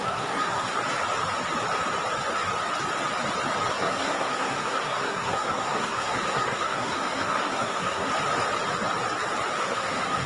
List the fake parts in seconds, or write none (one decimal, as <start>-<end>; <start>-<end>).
0.0-0.8; 3.7-8.1; 9.6-10.3